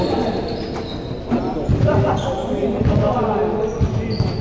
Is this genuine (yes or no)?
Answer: yes